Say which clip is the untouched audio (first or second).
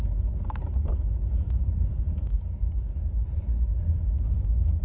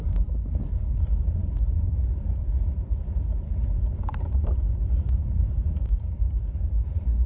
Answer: first